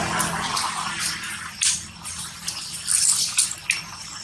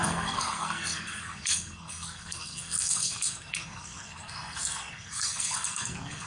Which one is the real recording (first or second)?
first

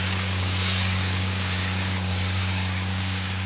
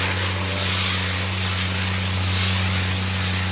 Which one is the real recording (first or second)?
second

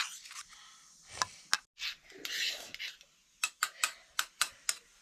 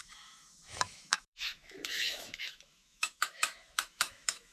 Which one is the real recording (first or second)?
first